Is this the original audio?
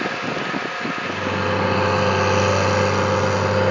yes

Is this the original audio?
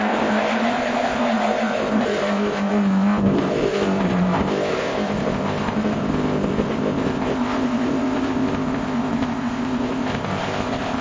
no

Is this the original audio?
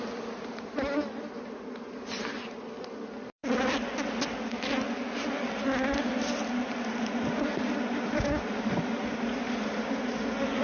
yes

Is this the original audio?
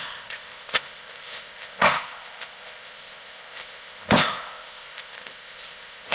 no